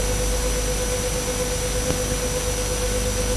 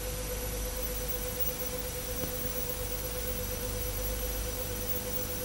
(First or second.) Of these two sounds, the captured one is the first